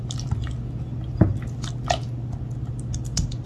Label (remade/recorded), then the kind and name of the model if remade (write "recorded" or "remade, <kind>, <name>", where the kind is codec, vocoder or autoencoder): recorded